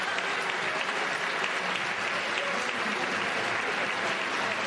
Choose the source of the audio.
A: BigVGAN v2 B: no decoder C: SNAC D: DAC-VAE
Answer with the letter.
B